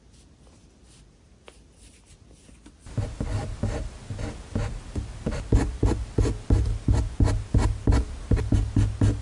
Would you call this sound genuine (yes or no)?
yes